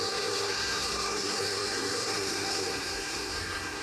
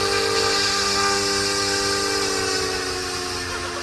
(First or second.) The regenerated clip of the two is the first